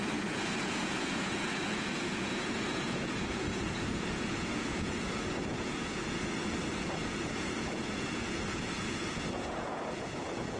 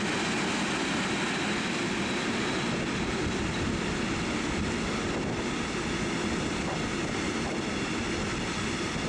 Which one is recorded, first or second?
second